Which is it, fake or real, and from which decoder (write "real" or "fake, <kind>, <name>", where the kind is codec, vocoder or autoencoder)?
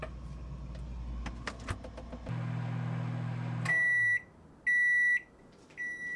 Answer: real